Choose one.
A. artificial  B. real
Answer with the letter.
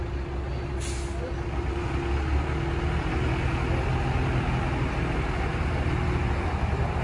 B